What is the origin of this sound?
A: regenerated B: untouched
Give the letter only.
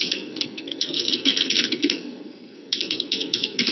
A